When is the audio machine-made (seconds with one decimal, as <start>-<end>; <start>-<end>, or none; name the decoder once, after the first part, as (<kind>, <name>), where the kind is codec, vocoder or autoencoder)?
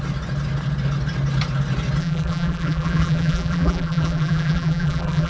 2.0-5.3 (vocoder, BigVGAN v2)